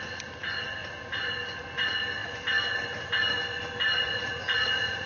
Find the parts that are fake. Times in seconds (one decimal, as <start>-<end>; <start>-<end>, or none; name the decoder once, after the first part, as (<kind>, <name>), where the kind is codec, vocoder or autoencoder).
4.0-5.1 (vocoder, Vocos)